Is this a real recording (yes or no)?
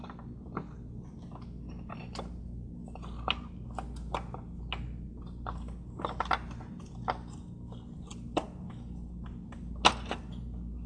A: yes